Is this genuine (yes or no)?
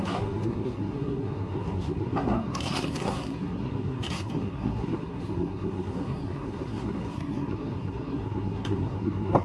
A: no